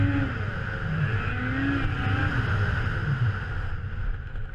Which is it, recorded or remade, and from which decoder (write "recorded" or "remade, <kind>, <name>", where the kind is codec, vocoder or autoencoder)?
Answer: recorded